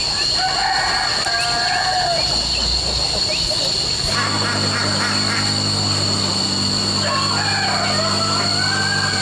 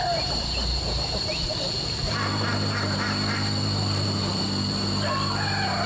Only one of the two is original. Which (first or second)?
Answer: first